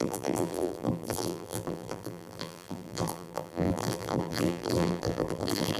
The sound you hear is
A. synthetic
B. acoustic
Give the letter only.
A